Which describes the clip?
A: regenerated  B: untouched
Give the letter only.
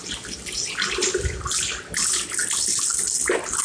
B